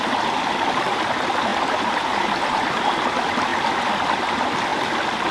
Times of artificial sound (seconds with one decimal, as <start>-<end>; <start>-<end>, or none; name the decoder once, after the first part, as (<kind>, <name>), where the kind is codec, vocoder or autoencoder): 1.5-2.6 (vocoder, BigVGAN v2)